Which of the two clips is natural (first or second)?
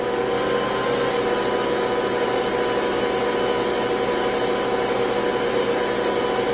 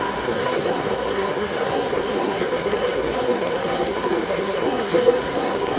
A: first